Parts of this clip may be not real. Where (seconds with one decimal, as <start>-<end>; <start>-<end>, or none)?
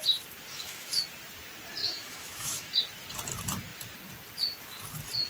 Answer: 0.5-1.0; 1.8-2.7